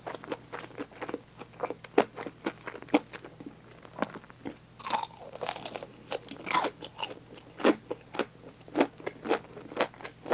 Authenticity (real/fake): real